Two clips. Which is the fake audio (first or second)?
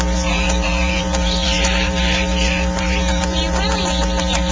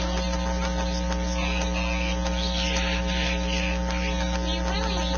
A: first